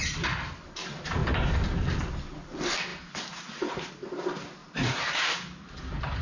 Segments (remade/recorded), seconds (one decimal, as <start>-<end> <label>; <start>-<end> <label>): 0.0-4.6 recorded; 4.6-5.3 remade; 5.3-6.2 recorded